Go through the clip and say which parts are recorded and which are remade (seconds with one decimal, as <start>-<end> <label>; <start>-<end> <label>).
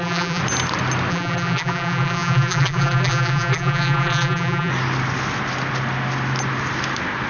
0.0-0.4 remade; 0.4-1.1 recorded; 1.1-4.7 remade; 4.7-7.3 recorded